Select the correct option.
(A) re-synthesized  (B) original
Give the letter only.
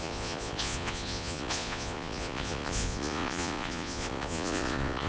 A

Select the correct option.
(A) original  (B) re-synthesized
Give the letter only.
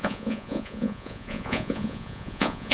B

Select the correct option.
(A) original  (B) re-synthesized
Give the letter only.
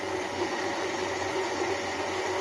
B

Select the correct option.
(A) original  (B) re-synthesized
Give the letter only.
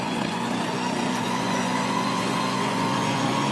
B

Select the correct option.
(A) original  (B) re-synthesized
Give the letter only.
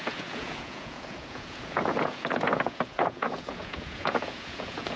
B